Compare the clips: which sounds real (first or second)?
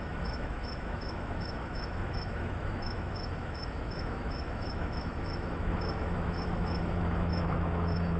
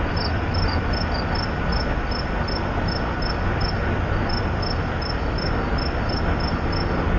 second